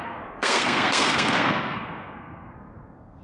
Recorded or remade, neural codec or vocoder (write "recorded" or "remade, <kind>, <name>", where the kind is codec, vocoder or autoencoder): remade, codec, SNAC